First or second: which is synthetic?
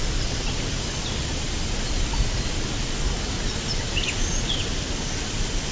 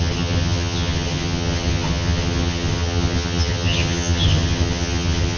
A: second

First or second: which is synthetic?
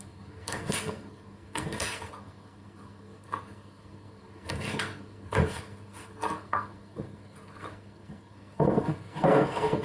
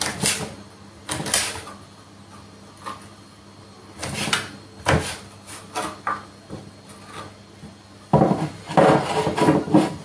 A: first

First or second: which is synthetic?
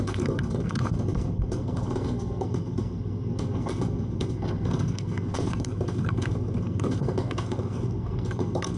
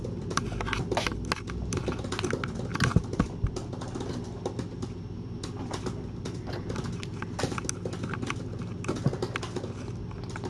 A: first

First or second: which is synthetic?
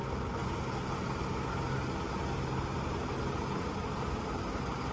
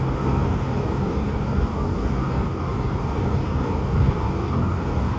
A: second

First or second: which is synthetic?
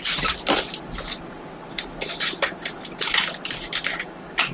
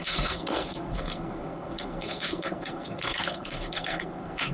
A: second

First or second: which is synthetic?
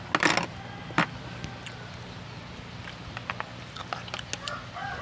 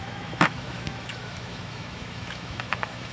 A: second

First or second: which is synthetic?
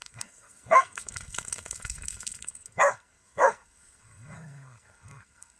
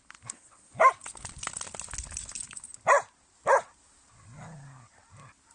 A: first